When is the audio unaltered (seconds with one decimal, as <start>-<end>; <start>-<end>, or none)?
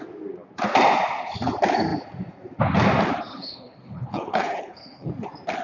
0.0-3.3; 5.1-5.6